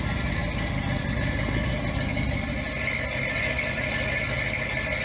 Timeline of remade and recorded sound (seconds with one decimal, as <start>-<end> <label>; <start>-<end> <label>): 0.0-5.0 recorded